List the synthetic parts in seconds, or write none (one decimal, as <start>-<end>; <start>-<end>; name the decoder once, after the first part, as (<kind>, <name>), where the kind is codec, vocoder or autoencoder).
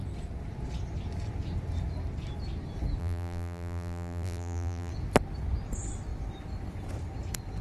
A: 3.0-4.9 (vocoder, BigVGAN v2)